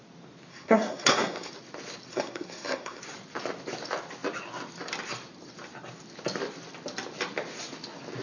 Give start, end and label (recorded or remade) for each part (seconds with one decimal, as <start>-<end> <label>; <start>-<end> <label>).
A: 0.0-0.5 recorded; 0.5-1.5 remade; 1.5-2.1 recorded; 2.1-3.0 remade; 3.0-8.2 recorded